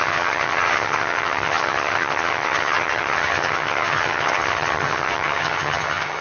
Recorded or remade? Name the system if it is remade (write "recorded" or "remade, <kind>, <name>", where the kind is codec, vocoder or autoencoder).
remade, vocoder, HiFi-GAN